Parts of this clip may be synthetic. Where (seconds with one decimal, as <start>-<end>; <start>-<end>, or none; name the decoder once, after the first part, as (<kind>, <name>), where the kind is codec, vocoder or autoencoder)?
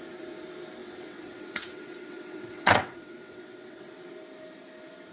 0.8-3.9 (vocoder, WaveNeXt)